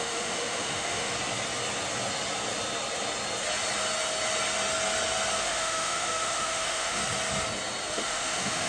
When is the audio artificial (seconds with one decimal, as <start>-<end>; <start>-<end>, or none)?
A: 0.0-1.1; 5.4-7.0; 7.9-8.7